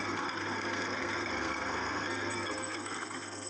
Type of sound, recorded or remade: remade